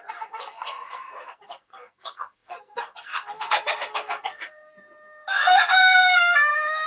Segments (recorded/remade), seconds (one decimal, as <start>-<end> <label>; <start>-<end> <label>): 0.0-6.9 remade